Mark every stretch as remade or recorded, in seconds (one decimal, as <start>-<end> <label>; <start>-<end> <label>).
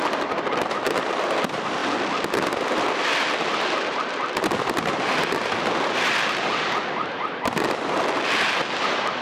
0.0-9.2 recorded